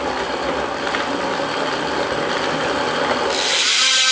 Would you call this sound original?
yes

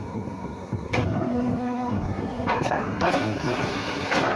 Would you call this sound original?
no